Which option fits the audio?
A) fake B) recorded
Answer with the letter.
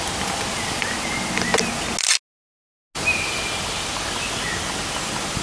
B